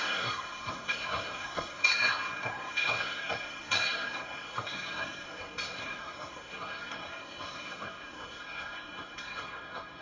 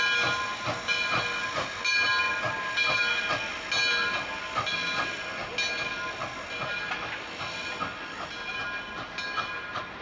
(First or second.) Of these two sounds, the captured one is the second